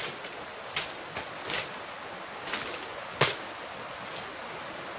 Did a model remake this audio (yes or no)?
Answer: no